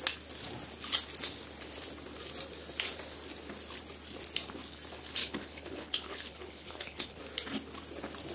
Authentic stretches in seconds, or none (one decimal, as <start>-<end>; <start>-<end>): 0.0-5.2; 7.2-8.3

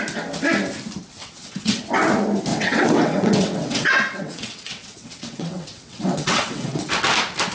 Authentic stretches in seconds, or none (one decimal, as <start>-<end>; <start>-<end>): 0.0-1.2; 1.8-2.5; 6.9-7.5

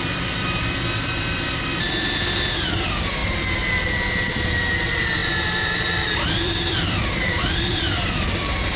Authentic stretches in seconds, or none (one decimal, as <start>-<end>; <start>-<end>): 3.2-4.2

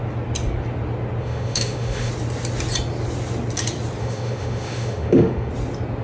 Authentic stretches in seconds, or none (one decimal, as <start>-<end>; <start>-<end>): 0.0-1.2; 2.1-4.0; 5.5-6.0

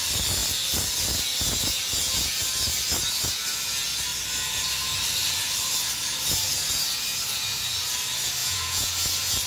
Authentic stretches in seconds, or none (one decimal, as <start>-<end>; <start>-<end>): 0.0-8.4; 8.9-9.5

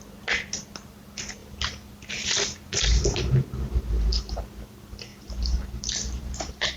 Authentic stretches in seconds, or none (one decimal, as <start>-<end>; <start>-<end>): 0.0-5.1

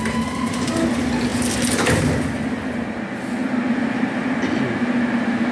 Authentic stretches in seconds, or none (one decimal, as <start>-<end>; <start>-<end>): 0.0-5.5

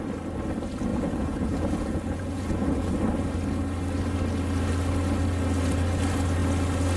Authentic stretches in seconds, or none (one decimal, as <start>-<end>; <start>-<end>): 0.0-0.9; 2.9-7.0